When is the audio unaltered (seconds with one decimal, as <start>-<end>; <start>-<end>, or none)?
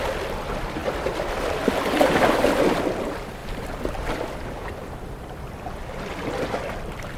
0.0-3.4